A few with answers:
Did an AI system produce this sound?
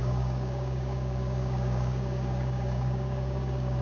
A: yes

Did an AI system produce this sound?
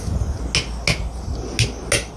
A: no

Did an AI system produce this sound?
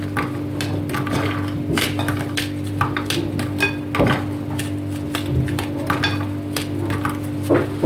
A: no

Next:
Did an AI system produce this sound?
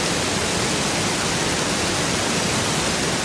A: no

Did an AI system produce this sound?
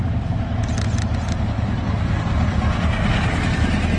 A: no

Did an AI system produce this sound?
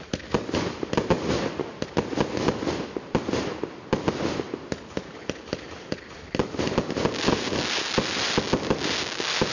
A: no